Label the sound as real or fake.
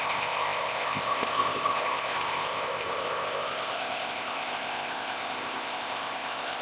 fake